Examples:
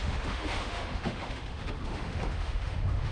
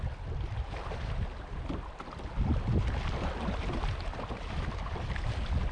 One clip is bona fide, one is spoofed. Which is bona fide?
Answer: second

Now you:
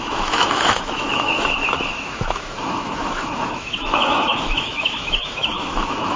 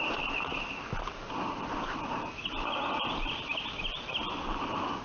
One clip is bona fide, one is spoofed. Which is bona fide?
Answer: second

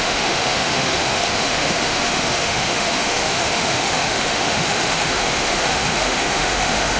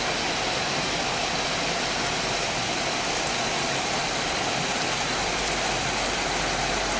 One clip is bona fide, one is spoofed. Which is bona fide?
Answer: second